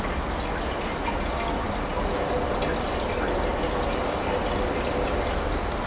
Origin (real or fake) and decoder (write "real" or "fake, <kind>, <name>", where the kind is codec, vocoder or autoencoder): real